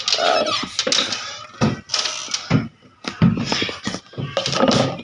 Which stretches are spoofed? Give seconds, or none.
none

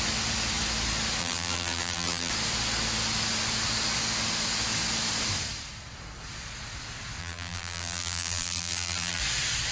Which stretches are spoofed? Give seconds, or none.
1.2-2.3 (vocoder, BigVGAN v2); 7.2-9.2

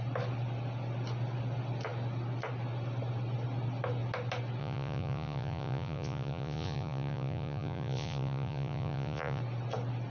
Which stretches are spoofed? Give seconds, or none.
4.6-9.4 (vocoder, Vocos)

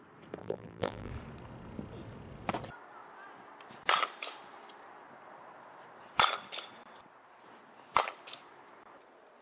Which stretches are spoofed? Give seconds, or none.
0.4-1.1 (vocoder, BigVGAN v2)

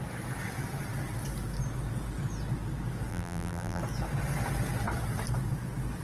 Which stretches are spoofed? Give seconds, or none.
3.1-3.8 (vocoder, BigVGAN v2)

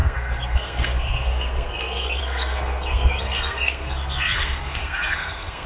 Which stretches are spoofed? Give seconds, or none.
0.0-5.7 (codec, SNAC)

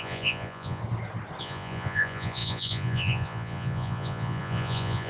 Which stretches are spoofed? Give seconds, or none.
0.0-0.8 (vocoder, Vocos); 1.4-5.1